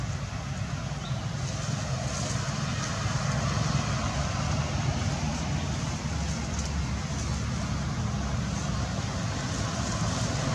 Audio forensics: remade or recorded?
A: recorded